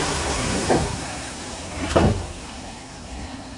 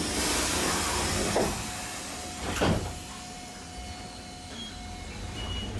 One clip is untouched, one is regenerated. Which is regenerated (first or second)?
first